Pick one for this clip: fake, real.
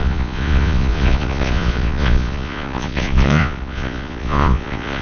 fake